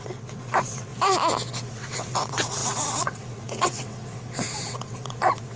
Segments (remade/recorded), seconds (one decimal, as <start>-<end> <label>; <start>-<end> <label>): 0.0-0.9 remade; 0.9-1.7 recorded; 1.7-5.6 remade